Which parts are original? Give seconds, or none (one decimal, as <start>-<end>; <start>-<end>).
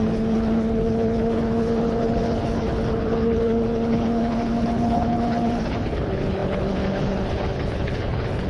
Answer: none